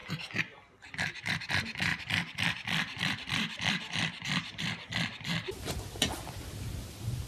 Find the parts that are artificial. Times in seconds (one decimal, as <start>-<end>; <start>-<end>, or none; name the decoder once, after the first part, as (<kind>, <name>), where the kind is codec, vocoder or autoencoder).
0.0-1.5 (vocoder, BigVGAN v2); 1.9-5.7